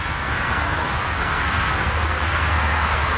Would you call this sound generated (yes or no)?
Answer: yes